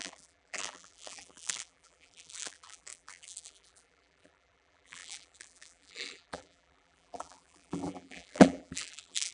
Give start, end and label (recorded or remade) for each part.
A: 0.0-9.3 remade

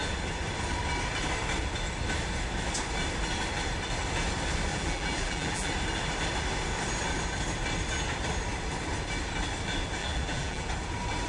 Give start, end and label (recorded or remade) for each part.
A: 0.0-4.7 recorded; 4.7-5.7 remade; 5.7-10.0 recorded; 10.0-10.7 remade; 10.7-11.3 recorded

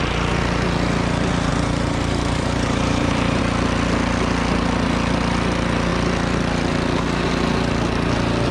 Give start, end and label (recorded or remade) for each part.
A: 0.0-1.5 recorded; 1.5-3.4 remade; 3.4-8.5 recorded